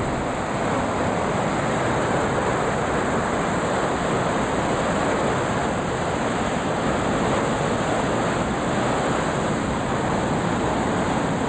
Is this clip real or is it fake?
real